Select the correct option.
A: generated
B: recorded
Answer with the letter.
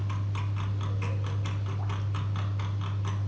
B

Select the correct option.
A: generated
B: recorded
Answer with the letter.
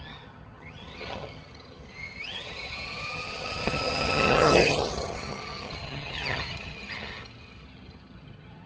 A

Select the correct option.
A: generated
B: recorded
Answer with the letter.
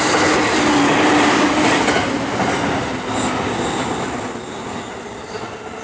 B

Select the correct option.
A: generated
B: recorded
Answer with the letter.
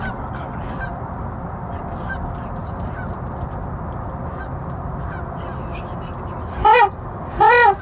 B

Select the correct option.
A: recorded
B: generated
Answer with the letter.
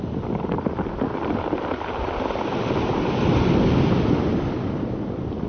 A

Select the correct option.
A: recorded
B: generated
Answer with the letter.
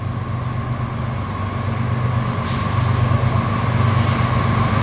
A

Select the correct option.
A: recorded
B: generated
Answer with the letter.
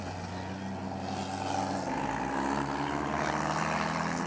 A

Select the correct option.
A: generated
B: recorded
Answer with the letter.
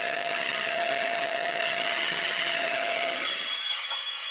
A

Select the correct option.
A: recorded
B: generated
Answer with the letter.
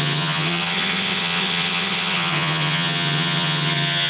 B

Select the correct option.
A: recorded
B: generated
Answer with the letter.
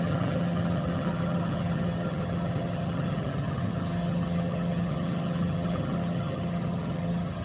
B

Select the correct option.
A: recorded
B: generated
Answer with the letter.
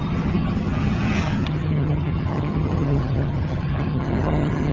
B